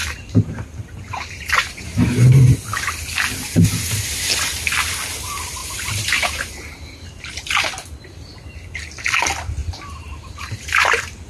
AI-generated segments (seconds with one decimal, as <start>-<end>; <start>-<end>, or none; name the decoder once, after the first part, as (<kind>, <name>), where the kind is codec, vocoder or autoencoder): 0.0-2.5 (vocoder, BigVGAN v2); 5.6-6.5; 9.6-11.3